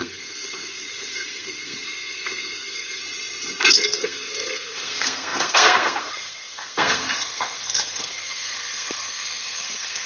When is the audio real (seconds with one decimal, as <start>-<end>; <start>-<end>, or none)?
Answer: 3.0-3.7